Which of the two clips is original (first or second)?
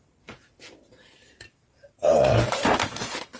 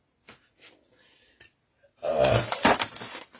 second